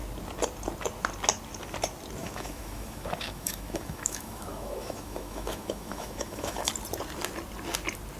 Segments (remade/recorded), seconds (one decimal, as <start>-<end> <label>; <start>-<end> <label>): 0.0-2.2 recorded; 2.2-6.7 remade; 6.7-8.2 recorded